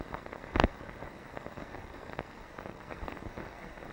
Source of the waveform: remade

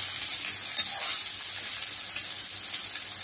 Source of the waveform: recorded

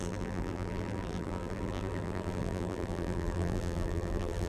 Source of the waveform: remade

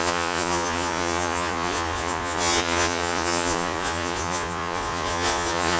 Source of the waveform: remade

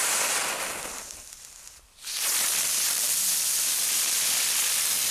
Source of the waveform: recorded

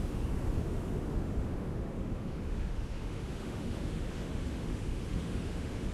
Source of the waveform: remade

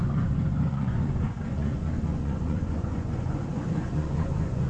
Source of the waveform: remade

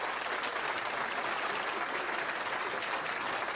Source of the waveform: recorded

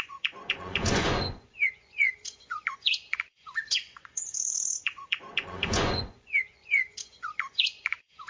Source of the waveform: remade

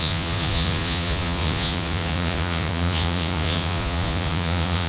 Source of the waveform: remade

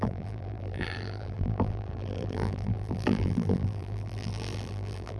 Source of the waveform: remade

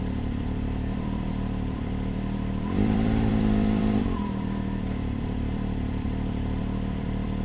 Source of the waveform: remade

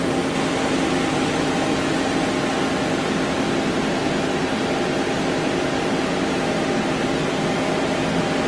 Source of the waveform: recorded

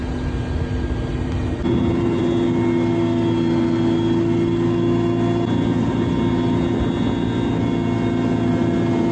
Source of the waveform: recorded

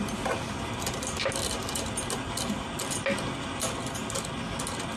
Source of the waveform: recorded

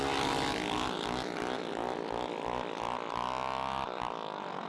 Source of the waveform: recorded